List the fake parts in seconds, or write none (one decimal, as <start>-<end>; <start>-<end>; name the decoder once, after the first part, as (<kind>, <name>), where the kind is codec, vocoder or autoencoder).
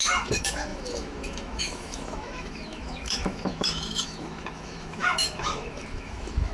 0.0-6.5 (autoencoder, DAC-VAE)